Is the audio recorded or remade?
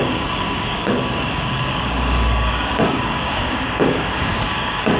remade